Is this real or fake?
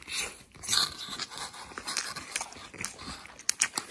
real